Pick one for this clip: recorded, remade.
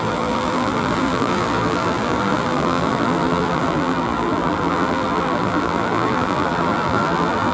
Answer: remade